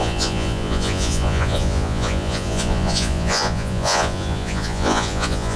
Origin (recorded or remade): remade